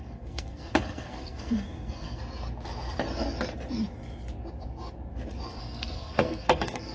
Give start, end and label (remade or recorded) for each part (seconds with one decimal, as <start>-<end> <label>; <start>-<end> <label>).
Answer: 0.0-2.2 remade; 2.2-5.6 recorded; 5.6-6.9 remade